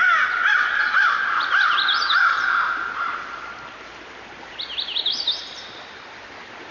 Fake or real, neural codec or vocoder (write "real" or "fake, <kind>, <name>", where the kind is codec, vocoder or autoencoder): real